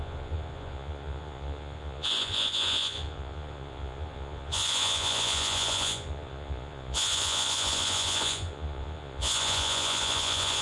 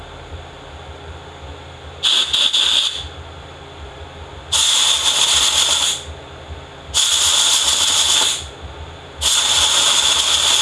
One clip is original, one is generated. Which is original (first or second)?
second